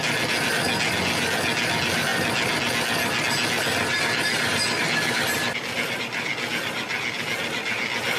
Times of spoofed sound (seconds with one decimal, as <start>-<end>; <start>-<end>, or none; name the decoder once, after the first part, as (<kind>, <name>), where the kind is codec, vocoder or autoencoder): none